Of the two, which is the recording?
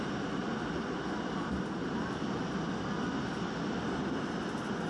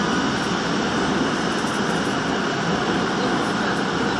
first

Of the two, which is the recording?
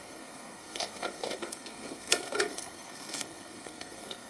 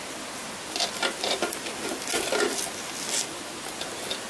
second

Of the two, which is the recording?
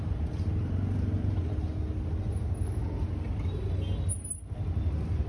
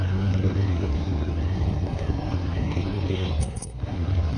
first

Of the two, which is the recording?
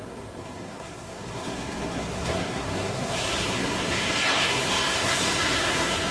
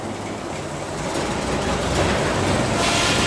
second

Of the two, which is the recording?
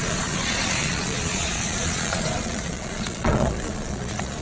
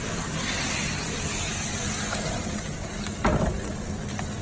second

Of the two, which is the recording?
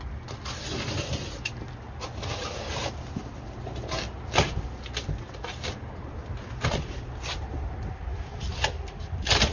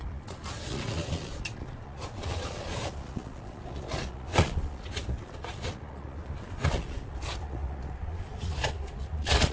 first